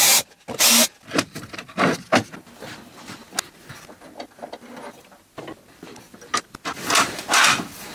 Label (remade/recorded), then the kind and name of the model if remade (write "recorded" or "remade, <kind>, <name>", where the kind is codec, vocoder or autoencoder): recorded